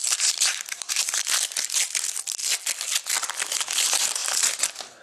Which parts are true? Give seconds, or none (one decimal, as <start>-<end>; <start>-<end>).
1.2-5.0